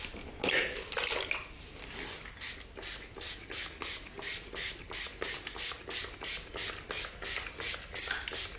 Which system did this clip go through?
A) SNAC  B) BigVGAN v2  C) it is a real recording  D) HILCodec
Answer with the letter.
C